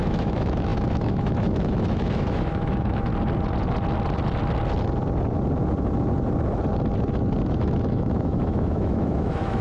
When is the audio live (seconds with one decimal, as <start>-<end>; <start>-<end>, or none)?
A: 3.1-7.5